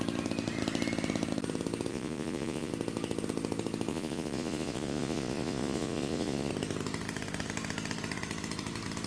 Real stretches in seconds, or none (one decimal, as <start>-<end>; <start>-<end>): 0.0-1.9; 2.7-3.9; 6.5-9.1

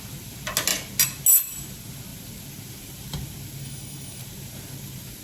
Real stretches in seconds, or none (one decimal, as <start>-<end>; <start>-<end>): 0.0-3.6; 4.2-5.2

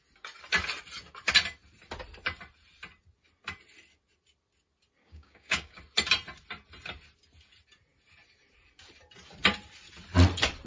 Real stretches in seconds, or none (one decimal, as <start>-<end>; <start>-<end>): 0.0-5.0; 5.8-10.7

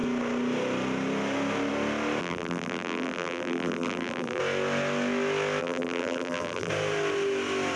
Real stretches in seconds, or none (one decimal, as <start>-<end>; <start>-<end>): 0.0-2.2; 4.4-5.6; 6.7-7.8

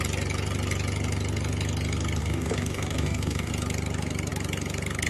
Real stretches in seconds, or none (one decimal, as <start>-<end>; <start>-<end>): 0.0-2.2; 3.5-5.1

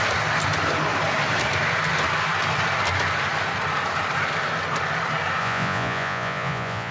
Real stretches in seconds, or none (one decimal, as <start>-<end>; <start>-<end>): 0.0-5.4

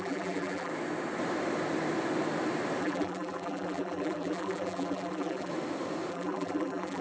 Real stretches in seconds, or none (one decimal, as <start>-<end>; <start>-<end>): 0.7-2.8; 5.5-6.1

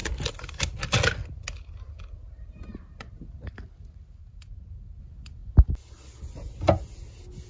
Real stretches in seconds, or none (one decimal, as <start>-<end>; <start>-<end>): 0.0-4.2; 5.0-7.5